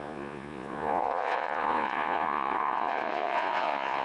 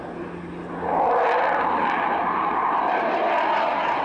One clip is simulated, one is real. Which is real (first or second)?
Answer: second